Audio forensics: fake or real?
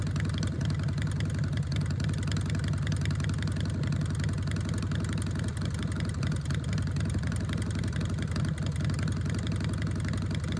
real